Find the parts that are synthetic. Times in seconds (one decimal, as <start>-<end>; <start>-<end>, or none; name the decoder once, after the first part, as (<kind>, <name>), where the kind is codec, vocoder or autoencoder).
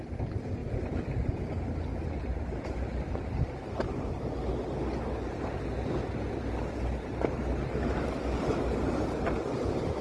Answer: none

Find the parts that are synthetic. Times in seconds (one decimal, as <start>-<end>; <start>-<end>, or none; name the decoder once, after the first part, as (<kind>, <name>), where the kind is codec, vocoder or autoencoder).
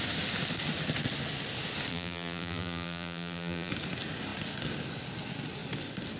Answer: 1.9-3.7 (vocoder, BigVGAN v2)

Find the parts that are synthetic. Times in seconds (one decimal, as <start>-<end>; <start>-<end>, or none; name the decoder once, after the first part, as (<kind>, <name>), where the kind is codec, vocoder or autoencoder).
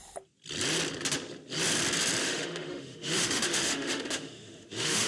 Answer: 2.2-5.1 (autoencoder, DAC-VAE)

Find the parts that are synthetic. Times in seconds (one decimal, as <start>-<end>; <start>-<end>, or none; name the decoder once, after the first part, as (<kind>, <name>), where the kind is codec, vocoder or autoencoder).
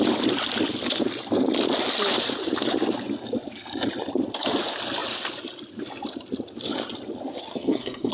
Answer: 7.5-8.1 (codec, SNAC)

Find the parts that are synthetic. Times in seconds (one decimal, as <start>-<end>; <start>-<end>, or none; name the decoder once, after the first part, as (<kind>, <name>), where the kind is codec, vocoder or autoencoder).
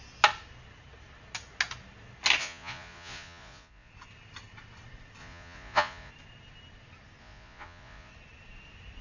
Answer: 2.4-3.9 (vocoder, Vocos); 5.2-6.1; 7.2-8.1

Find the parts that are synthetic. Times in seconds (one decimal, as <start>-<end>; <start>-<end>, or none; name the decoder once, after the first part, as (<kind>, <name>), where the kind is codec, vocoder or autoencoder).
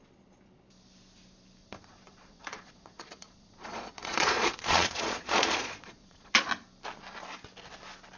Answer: 1.6-6.5 (vocoder, Vocos)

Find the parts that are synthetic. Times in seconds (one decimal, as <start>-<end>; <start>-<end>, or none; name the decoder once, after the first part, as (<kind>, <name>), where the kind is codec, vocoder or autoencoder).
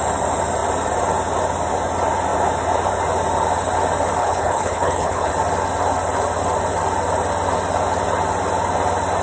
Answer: 4.2-5.3 (codec, HILCodec)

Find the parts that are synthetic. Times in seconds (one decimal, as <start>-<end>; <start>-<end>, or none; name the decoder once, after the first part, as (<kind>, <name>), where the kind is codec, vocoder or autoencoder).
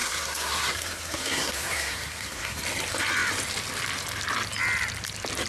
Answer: 0.0-2.6 (codec, SNAC)